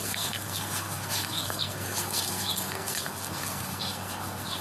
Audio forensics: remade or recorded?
remade